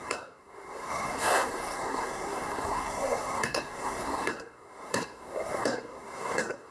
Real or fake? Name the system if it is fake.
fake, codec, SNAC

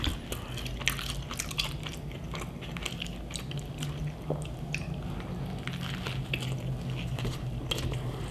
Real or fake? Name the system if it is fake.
real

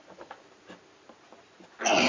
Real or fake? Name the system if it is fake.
real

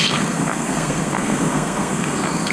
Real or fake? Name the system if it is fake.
fake, codec, SNAC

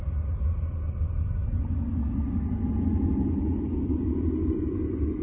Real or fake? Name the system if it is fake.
real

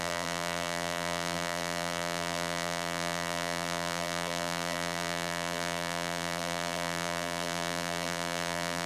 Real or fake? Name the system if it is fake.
fake, vocoder, BigVGAN v2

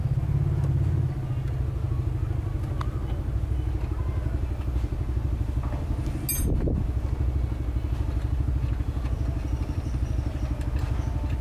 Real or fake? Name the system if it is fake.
real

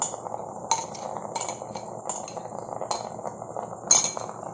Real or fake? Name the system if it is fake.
real